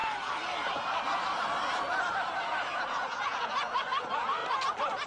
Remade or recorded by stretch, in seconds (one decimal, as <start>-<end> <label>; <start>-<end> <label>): 0.0-2.4 recorded; 2.4-4.4 remade; 4.4-5.1 recorded